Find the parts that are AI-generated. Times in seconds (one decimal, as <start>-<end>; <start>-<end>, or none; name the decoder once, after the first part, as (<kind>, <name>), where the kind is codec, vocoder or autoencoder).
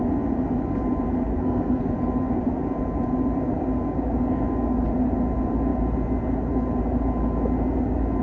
1.3-1.9 (codec, SNAC)